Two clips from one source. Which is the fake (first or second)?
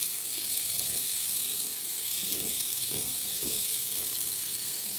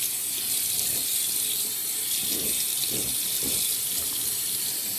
first